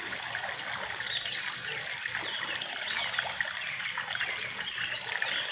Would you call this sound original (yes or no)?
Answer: yes